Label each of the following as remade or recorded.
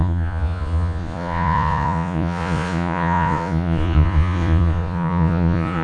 remade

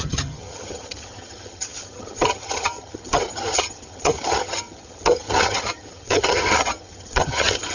remade